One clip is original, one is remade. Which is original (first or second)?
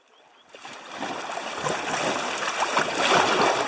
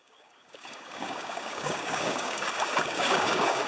first